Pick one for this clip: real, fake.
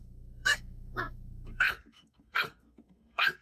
fake